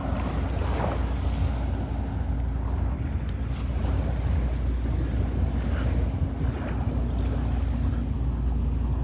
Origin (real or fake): real